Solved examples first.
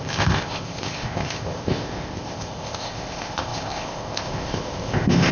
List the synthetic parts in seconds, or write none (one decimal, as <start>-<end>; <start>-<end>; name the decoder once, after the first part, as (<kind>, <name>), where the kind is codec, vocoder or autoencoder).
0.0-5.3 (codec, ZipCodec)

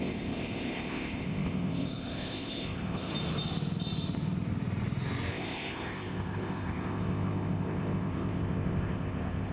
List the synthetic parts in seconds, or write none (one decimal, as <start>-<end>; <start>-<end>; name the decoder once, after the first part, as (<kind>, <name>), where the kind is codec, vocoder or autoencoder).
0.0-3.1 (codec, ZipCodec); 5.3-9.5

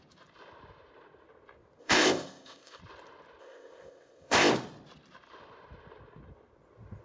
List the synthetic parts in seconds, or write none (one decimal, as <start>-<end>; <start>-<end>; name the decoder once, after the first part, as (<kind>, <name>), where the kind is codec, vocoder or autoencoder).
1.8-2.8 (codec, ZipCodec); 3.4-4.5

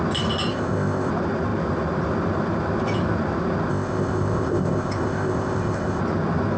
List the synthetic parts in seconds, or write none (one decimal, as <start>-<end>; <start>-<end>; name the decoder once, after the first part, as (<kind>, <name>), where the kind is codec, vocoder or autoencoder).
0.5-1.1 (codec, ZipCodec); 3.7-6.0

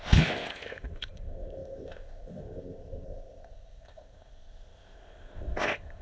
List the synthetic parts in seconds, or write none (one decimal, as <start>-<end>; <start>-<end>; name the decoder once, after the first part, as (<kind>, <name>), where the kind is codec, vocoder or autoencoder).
0.0-6.0 (codec, ZipCodec)

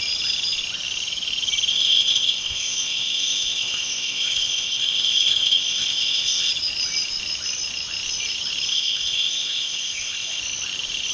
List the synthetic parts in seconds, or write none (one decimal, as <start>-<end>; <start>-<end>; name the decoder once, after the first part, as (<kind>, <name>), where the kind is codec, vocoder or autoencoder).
1.7-6.5 (codec, ZipCodec); 8.7-10.4

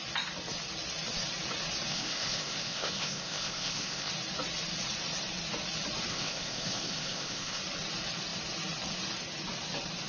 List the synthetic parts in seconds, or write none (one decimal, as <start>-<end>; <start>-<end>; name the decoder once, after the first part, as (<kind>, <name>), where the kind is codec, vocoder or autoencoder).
1.9-4.1 (codec, ZipCodec); 6.1-7.6